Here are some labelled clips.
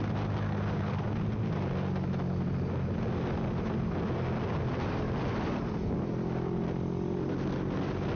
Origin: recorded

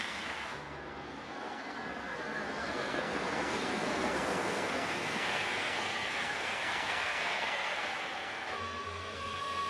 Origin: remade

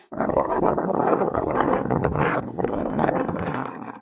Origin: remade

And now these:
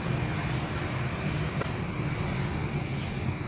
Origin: recorded